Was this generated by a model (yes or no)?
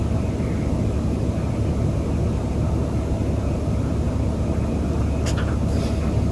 no